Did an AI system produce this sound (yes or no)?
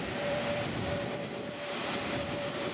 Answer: yes